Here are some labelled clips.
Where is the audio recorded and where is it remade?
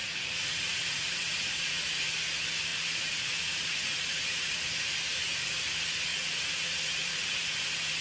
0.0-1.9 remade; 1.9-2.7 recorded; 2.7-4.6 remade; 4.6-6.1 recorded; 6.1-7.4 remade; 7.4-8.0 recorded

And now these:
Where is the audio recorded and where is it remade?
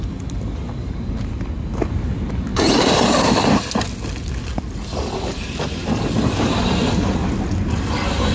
0.0-2.5 recorded; 2.5-3.3 remade; 3.3-8.3 recorded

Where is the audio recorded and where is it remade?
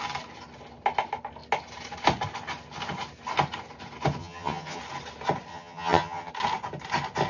0.0-4.2 recorded; 4.2-4.8 remade; 4.8-5.5 recorded; 5.5-6.3 remade; 6.3-7.3 recorded